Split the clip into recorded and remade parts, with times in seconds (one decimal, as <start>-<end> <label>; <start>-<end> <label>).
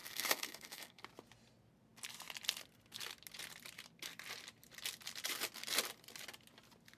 0.0-1.0 remade; 1.0-7.0 recorded